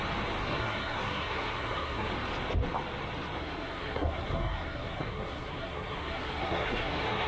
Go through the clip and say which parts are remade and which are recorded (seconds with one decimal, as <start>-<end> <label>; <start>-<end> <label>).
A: 0.0-0.4 recorded; 0.4-2.1 remade; 2.1-3.4 recorded; 3.4-7.3 remade